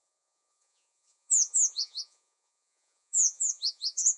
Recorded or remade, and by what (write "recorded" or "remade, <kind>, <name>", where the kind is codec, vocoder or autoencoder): remade, vocoder, Vocos